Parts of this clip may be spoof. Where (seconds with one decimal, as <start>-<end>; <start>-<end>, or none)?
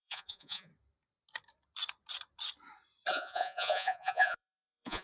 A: 0.0-0.7; 3.1-5.0